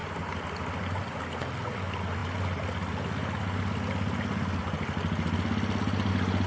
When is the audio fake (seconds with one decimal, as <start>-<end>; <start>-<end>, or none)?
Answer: none